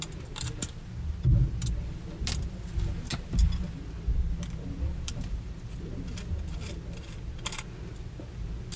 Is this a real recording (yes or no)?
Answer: yes